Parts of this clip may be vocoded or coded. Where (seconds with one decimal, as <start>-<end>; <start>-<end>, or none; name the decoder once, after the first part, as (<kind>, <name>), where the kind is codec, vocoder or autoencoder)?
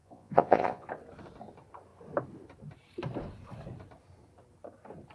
0.0-0.9 (vocoder, Vocos)